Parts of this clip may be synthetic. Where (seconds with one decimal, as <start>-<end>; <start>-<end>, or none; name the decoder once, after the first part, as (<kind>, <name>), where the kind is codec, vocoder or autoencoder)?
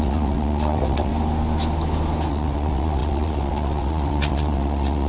0.0-1.1 (vocoder, WaveNeXt); 2.3-5.1